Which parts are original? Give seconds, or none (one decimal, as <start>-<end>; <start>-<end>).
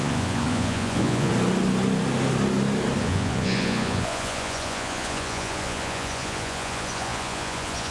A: 1.3-3.0